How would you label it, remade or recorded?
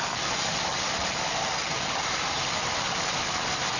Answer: recorded